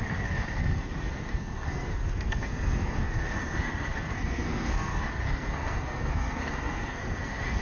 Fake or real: fake